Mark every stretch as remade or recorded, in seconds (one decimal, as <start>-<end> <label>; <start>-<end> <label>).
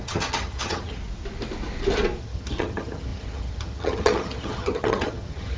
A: 0.0-1.0 remade; 1.0-2.2 recorded; 2.2-5.6 remade